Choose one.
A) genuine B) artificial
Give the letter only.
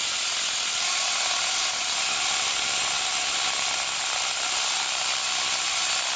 A